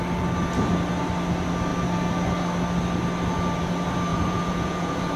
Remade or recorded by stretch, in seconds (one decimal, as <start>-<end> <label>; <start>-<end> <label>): 0.0-4.1 recorded; 4.1-5.2 remade